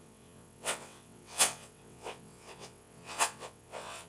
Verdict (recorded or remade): remade